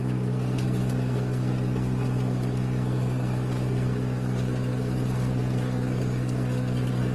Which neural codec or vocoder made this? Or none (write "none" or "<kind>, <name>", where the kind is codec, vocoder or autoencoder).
codec, SNAC